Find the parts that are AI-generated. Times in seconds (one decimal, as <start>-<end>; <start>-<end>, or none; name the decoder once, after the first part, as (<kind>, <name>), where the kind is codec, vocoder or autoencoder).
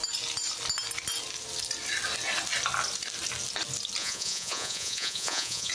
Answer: 4.0-5.7 (vocoder, Vocos)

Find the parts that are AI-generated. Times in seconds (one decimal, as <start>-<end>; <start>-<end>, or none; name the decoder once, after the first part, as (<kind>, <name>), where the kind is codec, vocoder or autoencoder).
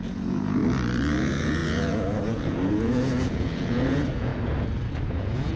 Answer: 0.0-0.6 (vocoder, Vocos); 1.2-4.3; 4.9-5.6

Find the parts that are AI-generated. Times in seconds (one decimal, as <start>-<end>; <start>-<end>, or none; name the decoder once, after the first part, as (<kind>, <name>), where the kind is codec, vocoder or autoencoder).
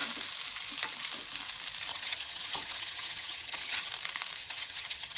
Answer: 1.9-3.9 (vocoder, HiFi-GAN); 4.4-5.2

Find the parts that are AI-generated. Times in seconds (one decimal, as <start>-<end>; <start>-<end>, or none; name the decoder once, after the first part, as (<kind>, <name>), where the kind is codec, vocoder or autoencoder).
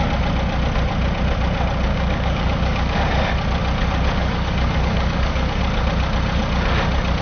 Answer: 1.9-3.0 (codec, DAC); 4.2-5.6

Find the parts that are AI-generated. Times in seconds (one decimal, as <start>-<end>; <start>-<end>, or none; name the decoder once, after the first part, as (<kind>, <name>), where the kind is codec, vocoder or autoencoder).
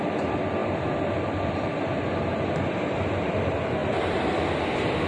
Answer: 0.6-3.3 (vocoder, BigVGAN v2); 3.8-4.4